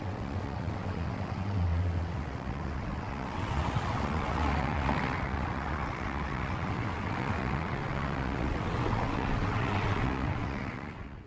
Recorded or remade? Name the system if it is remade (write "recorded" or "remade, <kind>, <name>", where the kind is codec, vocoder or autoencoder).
remade, vocoder, WaveNeXt